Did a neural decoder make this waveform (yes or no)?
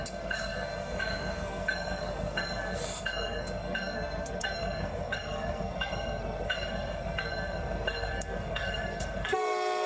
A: yes